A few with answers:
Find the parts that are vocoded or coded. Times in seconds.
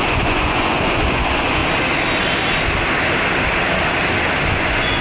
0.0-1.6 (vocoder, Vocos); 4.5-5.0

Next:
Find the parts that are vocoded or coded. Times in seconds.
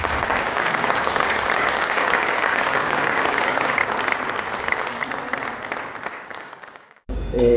0.0-3.8 (codec, DAC); 4.6-5.0; 6.1-7.6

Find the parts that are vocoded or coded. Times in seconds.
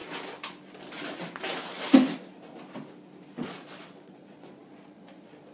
3.3-5.5 (vocoder, Vocos)